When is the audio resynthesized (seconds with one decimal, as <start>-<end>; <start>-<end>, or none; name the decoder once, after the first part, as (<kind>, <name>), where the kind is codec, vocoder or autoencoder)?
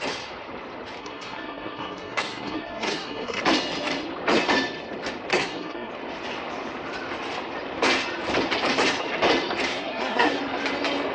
1.0-3.4 (codec, SNAC); 5.3-5.9; 9.7-10.4